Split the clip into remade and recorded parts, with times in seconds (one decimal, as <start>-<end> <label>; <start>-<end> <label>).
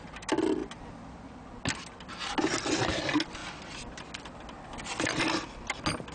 0.0-6.1 recorded